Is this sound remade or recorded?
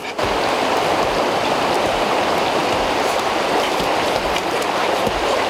remade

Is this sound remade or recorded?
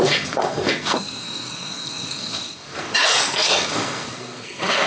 remade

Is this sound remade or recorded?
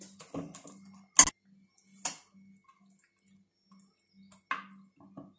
recorded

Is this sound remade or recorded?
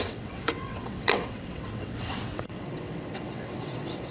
remade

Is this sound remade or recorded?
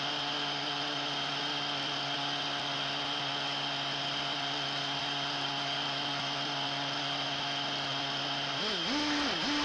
recorded